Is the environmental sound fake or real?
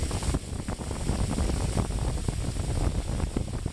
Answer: real